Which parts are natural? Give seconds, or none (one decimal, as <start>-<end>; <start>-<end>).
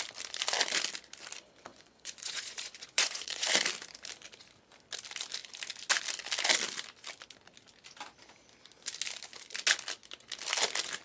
0.0-1.7; 3.5-11.0